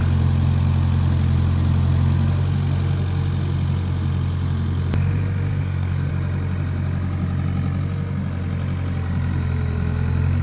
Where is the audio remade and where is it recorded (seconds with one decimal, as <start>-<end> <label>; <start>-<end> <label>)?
0.0-5.5 recorded; 5.5-6.1 remade; 6.1-10.4 recorded